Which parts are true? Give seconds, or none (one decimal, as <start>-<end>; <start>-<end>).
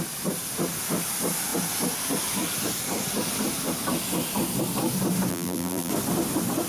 0.0-5.3; 5.9-6.7